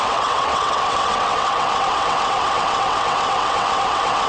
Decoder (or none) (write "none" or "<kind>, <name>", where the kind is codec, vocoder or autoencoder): vocoder, WaveNeXt